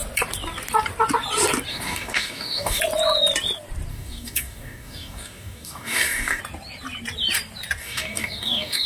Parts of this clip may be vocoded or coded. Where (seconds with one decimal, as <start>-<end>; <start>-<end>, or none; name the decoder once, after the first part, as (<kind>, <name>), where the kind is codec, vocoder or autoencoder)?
1.7-2.8 (codec, DAC); 3.9-6.4; 7.8-8.9